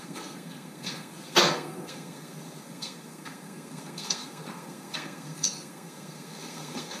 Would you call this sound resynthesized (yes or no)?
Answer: yes